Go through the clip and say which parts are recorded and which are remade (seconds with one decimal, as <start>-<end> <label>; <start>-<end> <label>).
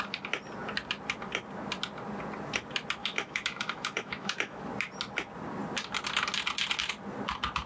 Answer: 0.0-3.0 recorded; 3.0-4.6 remade; 4.6-7.7 recorded